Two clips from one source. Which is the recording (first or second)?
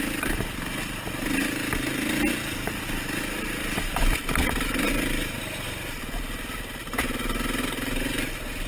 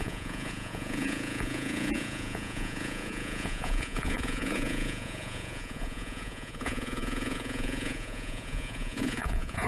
first